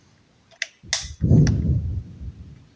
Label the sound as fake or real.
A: real